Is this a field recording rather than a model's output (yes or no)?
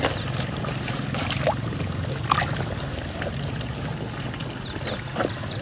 yes